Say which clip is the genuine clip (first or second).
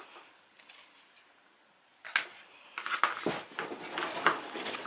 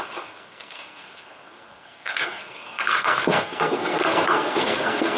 first